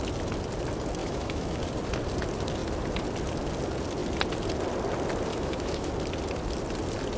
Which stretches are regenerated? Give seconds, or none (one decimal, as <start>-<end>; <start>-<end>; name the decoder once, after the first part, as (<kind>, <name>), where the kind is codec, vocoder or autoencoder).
1.0-1.6 (autoencoder, DAC-VAE); 5.3-5.9